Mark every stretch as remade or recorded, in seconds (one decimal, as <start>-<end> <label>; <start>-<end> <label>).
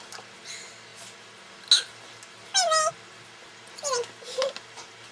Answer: 0.0-5.1 recorded